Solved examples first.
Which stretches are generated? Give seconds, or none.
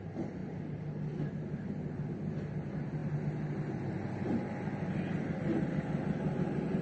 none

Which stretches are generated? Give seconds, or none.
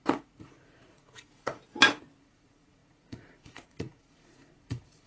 0.0-1.6 (vocoder, Vocos); 2.2-5.1